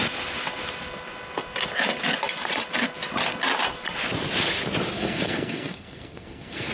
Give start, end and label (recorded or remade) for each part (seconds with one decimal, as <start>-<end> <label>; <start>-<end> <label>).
0.0-4.9 recorded; 4.9-6.7 remade